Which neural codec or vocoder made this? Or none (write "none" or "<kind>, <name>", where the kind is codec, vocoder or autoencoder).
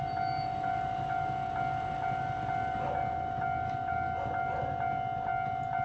none